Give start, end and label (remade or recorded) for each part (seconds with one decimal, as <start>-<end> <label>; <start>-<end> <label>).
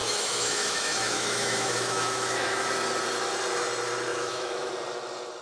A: 0.0-2.7 remade; 2.7-4.1 recorded; 4.1-4.7 remade; 4.7-5.4 recorded